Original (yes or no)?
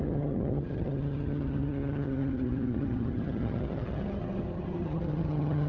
no